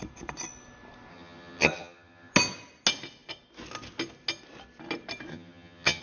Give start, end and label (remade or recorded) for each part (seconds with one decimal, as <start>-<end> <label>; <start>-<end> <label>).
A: 0.0-1.1 recorded; 1.1-2.3 remade; 2.3-5.3 recorded; 5.3-6.0 remade